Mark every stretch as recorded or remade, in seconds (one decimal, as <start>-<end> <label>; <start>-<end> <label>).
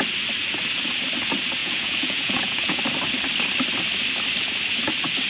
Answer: 0.0-1.6 recorded; 1.6-2.8 remade; 2.8-5.3 recorded